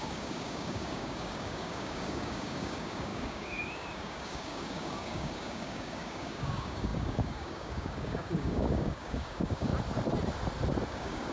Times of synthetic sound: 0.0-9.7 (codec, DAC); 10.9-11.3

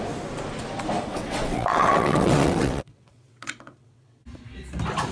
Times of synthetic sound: 1.1-4.2 (vocoder, WaveNeXt)

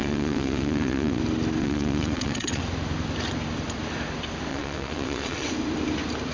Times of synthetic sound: 0.0-1.2 (vocoder, WaveNeXt); 1.6-2.6; 4.5-5.5